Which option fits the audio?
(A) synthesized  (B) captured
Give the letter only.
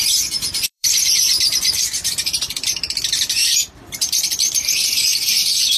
A